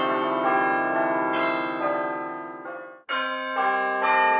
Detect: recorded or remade recorded